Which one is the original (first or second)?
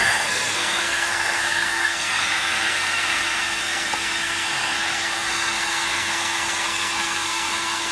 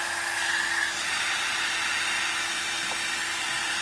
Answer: second